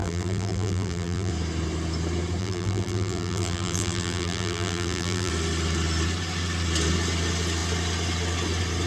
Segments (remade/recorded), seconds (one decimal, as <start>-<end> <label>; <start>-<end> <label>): 0.0-1.3 remade; 1.3-2.4 recorded; 2.4-5.3 remade; 5.3-8.9 recorded